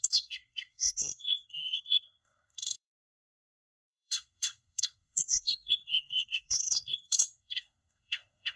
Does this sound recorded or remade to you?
remade